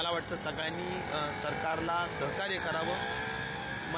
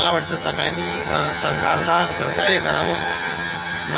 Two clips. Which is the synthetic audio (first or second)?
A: second